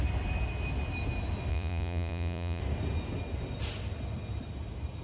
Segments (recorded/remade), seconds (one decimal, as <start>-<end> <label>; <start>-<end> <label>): 0.0-1.5 recorded; 1.5-2.6 remade; 2.6-5.0 recorded